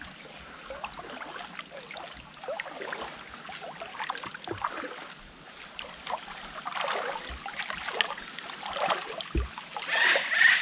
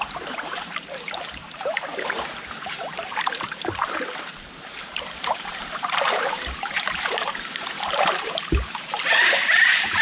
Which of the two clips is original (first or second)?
first